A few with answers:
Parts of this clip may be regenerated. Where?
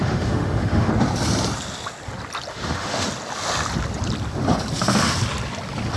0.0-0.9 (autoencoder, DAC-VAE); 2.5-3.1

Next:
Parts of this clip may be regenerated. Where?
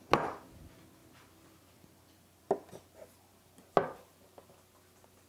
none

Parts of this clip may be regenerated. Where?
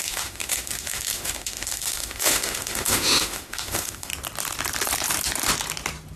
0.0-4.1 (autoencoder, DAC-VAE)